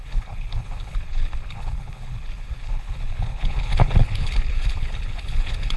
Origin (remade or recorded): remade